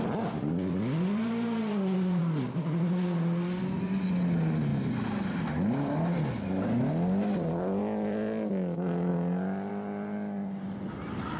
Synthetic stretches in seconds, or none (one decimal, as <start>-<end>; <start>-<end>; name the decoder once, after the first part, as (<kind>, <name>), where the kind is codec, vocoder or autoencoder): none